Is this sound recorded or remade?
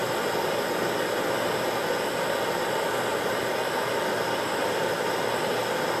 recorded